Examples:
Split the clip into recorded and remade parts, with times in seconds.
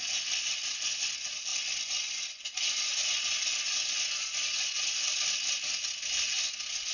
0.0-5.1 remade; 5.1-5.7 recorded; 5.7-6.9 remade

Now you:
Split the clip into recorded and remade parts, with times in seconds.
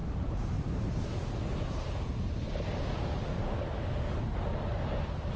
0.0-0.6 remade; 0.6-5.4 recorded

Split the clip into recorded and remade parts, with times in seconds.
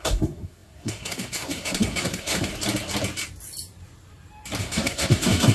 0.0-2.5 remade; 2.5-4.6 recorded; 4.6-5.5 remade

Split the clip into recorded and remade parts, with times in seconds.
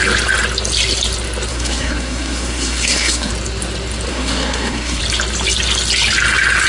0.0-1.5 recorded; 1.5-3.3 remade; 3.3-4.1 recorded; 4.1-5.0 remade; 5.0-6.7 recorded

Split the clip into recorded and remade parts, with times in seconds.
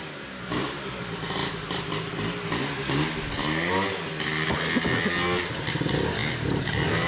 0.0-7.1 recorded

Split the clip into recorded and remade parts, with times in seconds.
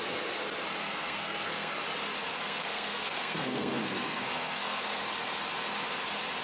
0.0-0.8 recorded; 0.8-1.7 remade; 1.7-2.3 recorded; 2.3-5.0 remade; 5.0-6.4 recorded